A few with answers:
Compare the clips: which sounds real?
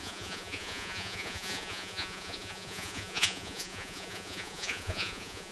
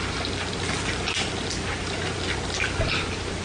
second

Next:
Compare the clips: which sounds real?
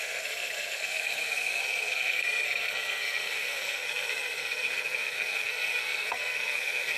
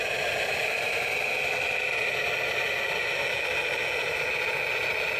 second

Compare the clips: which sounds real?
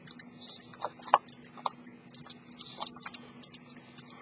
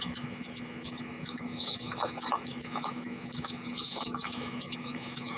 first